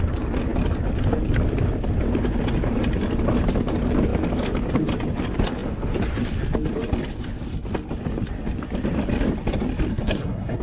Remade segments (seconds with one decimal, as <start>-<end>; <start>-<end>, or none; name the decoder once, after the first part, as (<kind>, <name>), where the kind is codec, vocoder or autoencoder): 9.9-10.6 (codec, SNAC)

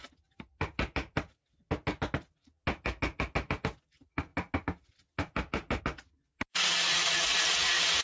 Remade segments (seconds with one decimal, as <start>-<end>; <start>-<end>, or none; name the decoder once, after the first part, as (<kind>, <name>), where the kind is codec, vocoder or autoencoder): 6.5-8.0 (vocoder, Vocos)

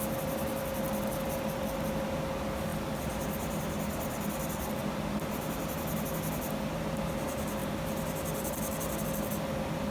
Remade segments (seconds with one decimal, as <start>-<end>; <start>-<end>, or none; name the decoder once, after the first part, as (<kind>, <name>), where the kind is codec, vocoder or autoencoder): none

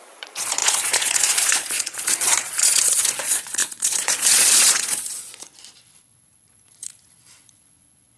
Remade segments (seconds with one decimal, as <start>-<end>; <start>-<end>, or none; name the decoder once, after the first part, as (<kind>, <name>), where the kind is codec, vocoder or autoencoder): 0.0-8.2 (vocoder, Vocos)

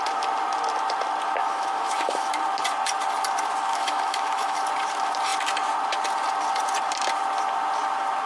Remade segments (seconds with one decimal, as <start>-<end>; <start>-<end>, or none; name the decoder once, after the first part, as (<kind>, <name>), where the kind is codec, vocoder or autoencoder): 1.4-2.3 (autoencoder, DAC-VAE); 3.7-4.6

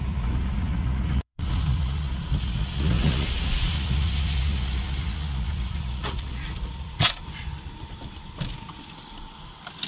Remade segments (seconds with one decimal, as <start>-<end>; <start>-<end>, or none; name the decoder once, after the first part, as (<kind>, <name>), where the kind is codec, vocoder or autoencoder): 0.0-7.2 (vocoder, Vocos)

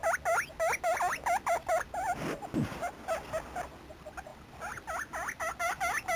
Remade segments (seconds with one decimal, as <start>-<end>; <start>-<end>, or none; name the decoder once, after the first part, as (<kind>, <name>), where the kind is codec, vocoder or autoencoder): none